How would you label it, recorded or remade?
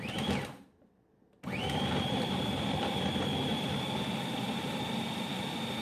recorded